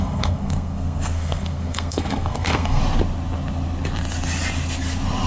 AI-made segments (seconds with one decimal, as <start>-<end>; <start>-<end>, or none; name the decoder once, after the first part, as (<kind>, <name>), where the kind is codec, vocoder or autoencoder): 0.0-2.8 (codec, SNAC)